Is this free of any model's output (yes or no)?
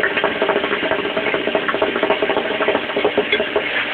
yes